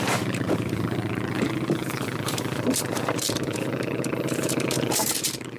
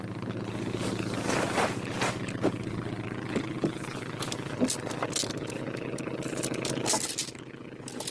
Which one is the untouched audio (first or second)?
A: second